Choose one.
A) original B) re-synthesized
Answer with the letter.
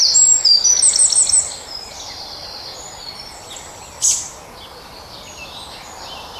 A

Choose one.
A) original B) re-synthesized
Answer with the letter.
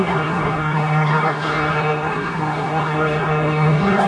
B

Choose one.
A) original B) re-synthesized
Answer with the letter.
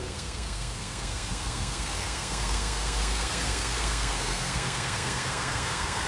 B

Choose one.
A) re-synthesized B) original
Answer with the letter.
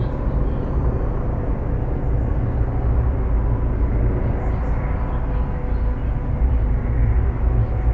B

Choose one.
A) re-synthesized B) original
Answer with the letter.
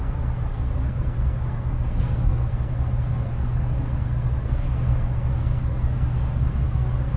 A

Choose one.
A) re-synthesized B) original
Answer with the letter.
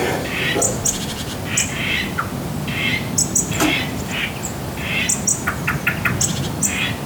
B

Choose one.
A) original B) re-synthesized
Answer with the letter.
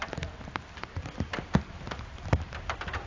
A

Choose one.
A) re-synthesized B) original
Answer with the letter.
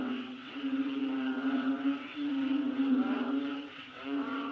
A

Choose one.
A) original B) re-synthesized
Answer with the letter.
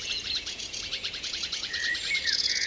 B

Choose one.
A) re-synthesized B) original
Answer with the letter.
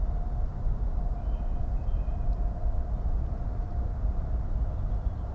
B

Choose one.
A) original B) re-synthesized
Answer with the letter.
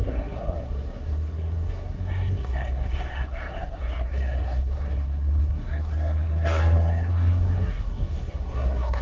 B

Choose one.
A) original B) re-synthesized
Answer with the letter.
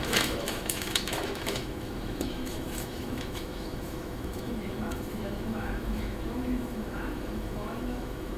B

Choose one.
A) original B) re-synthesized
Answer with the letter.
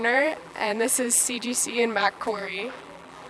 B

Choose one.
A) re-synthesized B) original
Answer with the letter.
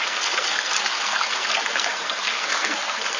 A